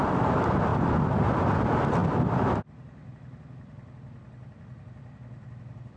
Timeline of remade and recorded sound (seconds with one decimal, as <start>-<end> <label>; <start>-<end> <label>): 0.0-6.0 recorded